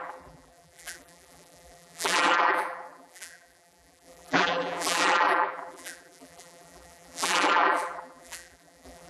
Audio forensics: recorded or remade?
remade